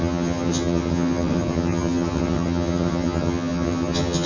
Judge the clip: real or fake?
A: fake